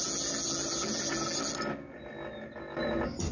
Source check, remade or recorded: recorded